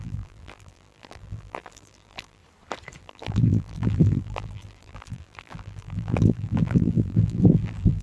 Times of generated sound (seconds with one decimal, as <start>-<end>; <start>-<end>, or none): 0.0-2.4; 3.0-8.0